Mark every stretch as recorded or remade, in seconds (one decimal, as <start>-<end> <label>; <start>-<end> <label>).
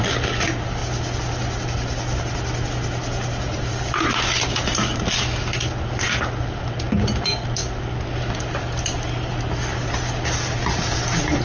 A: 0.0-11.4 recorded